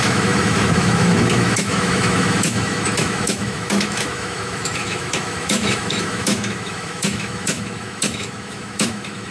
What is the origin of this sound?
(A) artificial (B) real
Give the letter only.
A